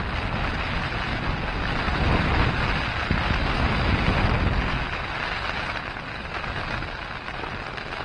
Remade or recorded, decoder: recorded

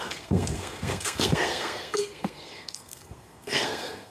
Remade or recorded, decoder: remade, codec, SNAC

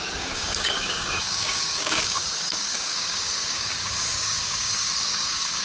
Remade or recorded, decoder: remade, codec, DAC